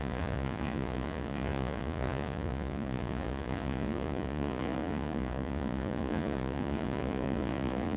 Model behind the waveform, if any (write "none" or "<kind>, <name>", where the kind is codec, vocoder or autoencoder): vocoder, Vocos